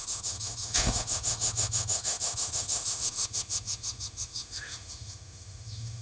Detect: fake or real fake